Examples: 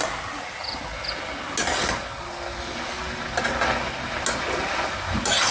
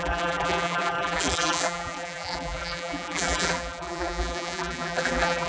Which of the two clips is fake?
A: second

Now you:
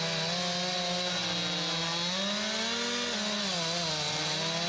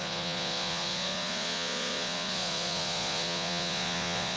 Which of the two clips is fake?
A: second